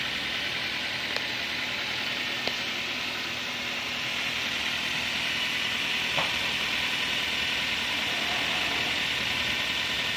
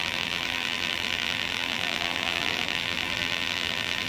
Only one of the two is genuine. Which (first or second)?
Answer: first